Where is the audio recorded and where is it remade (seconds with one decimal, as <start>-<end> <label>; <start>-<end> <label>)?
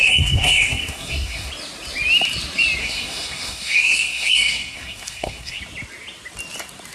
0.0-1.5 remade; 1.5-2.8 recorded; 2.8-5.6 remade; 5.6-6.9 recorded